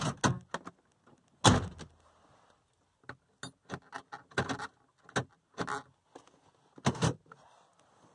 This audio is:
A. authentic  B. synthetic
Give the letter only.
A